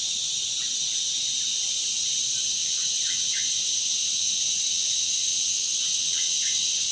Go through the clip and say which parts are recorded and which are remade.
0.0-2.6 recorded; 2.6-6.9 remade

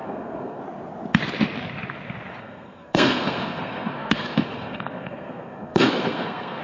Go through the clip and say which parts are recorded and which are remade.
0.0-0.6 remade; 0.6-2.4 recorded; 2.4-6.6 remade

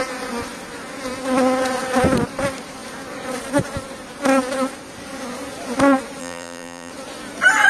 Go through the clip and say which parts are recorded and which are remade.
0.0-6.2 recorded; 6.2-6.9 remade; 6.9-7.7 recorded

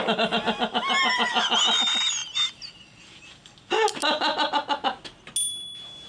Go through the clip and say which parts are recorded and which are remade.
0.0-6.1 recorded